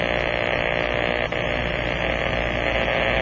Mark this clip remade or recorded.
recorded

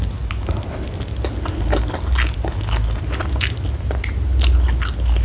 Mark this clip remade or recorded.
recorded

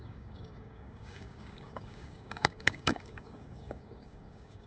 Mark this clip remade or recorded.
remade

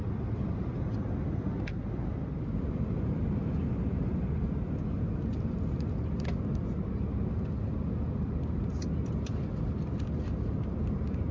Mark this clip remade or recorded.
recorded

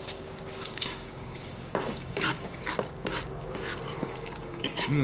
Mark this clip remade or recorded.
remade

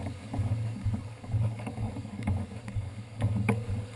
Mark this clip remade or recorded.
remade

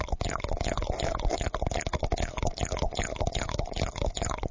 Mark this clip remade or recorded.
recorded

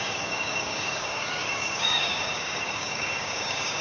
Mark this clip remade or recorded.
remade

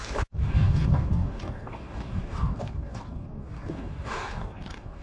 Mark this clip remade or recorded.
remade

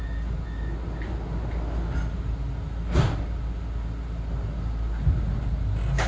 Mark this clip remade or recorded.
recorded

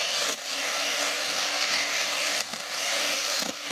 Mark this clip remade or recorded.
remade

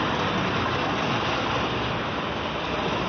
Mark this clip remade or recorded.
recorded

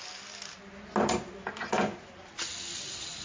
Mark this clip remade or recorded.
recorded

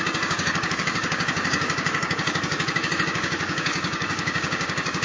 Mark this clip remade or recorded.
remade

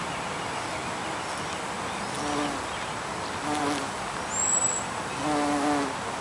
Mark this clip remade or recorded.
recorded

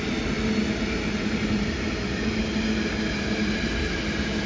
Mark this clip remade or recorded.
recorded